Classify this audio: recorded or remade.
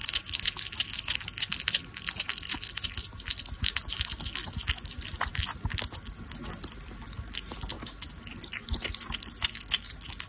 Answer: recorded